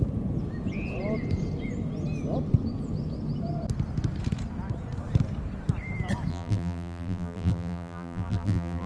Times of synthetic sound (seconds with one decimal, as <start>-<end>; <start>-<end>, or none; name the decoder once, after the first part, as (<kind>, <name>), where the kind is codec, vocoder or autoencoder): 6.3-8.9 (vocoder, BigVGAN v2)